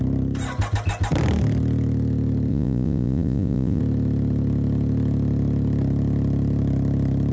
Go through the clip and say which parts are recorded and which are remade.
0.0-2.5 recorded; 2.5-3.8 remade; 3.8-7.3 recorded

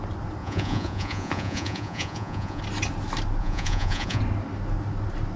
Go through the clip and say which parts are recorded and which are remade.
0.0-0.4 recorded; 0.4-2.6 remade; 2.6-3.4 recorded; 3.4-4.2 remade; 4.2-5.4 recorded